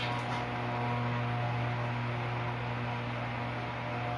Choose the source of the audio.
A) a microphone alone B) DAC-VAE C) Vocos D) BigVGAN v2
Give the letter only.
A